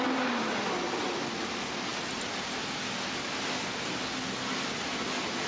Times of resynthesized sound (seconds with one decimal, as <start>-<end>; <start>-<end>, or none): none